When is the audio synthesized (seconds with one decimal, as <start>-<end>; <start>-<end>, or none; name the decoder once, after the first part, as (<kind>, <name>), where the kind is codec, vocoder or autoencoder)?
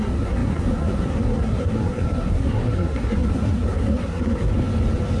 0.0-4.5 (codec, SNAC)